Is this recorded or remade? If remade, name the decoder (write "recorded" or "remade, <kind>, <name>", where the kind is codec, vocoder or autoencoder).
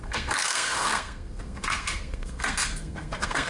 remade, codec, SNAC